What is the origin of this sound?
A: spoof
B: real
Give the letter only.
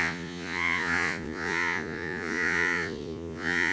A